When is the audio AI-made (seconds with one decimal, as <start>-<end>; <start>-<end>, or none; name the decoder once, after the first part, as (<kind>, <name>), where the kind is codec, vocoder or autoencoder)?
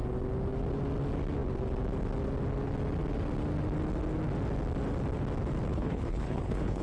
5.7-6.8 (codec, HILCodec)